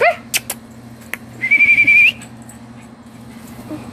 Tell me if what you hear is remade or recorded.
recorded